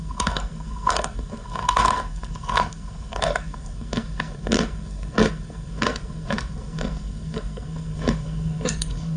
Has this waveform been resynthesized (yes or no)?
yes